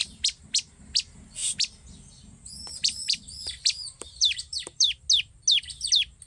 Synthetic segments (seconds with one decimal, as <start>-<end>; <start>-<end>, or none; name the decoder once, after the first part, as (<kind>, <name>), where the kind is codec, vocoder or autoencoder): 0.0-0.8 (vocoder, BigVGAN v2); 1.4-5.0